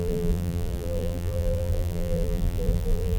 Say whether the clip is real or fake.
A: fake